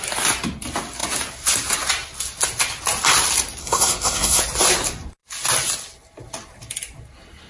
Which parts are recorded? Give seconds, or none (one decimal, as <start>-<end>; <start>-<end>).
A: 0.0-3.6; 4.4-7.5